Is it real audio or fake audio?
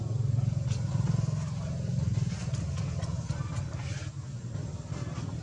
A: real